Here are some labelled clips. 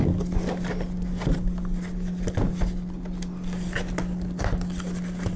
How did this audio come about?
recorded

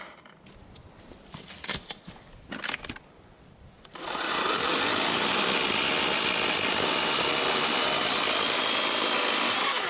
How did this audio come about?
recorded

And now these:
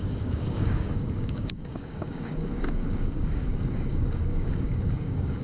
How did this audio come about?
remade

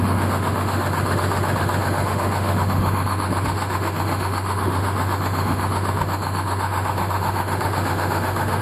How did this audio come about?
remade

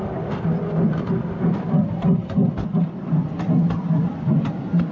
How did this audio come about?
recorded